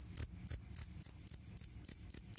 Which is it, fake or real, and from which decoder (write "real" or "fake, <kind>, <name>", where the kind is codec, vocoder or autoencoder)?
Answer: real